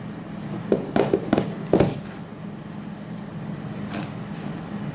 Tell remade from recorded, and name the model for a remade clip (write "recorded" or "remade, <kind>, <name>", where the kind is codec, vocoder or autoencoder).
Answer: recorded